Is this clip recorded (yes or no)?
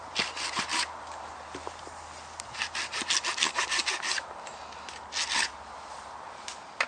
yes